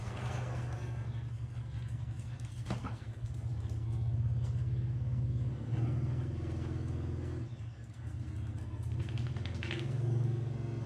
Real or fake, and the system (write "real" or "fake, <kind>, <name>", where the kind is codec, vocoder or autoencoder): fake, codec, SNAC